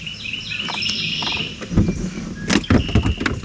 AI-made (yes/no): no